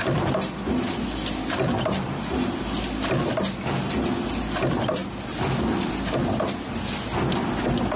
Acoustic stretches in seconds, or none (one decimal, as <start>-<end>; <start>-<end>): 0.0-8.0